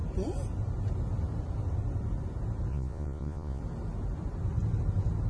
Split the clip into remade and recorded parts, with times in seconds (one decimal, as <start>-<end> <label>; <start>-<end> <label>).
0.0-2.7 recorded; 2.7-3.6 remade; 3.6-5.3 recorded